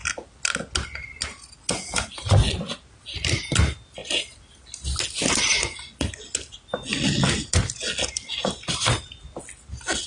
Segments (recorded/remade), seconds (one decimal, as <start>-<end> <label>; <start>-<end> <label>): 0.0-10.1 recorded